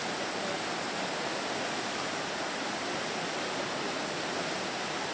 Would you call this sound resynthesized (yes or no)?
no